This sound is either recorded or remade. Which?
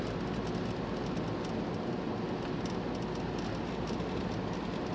recorded